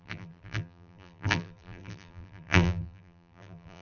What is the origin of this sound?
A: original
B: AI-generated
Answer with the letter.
B